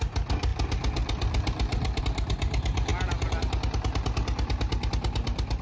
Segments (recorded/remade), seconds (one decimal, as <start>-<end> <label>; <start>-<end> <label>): 0.0-5.6 recorded